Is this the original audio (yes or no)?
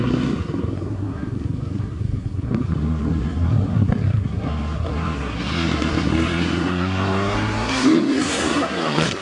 no